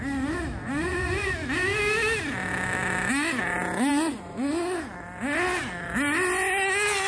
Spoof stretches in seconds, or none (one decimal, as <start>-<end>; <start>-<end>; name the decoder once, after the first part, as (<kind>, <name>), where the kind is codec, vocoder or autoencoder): 0.6-1.3 (vocoder, Vocos); 3.9-4.5